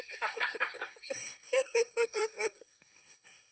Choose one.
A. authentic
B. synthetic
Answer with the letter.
B